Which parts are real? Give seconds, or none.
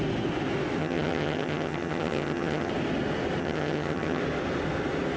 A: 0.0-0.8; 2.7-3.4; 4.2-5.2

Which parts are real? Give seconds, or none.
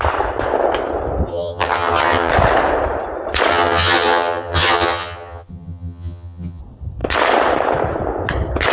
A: 0.0-1.3; 2.3-3.5; 6.6-8.7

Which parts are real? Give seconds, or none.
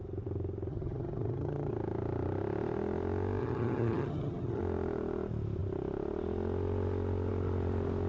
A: 0.0-0.7; 1.7-3.4; 4.6-8.1